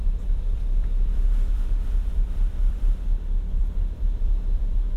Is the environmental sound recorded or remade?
remade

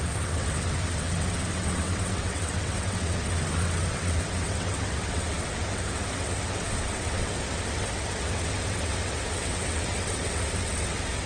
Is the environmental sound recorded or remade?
remade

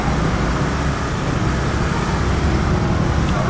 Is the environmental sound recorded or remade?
recorded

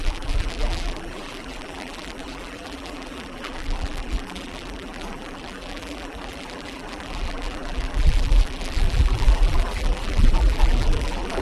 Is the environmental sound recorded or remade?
remade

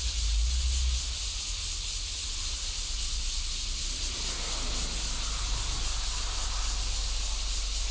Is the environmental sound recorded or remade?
recorded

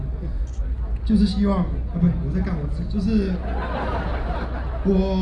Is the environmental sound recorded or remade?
recorded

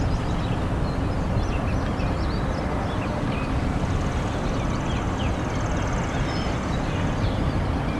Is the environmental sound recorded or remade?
recorded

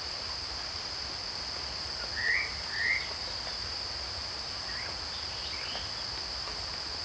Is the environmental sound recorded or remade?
recorded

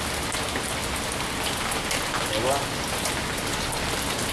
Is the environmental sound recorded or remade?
recorded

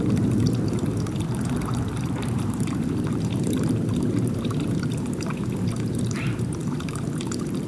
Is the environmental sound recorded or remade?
remade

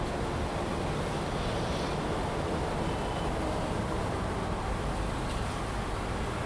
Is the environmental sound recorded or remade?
recorded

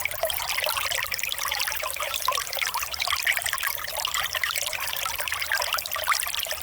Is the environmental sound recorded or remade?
remade